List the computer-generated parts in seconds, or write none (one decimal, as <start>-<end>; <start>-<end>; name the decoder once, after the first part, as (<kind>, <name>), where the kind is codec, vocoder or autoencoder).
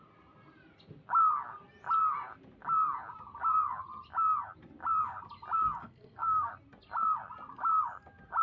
5.8-6.5 (codec, SNAC)